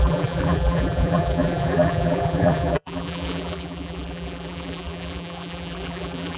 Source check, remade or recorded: remade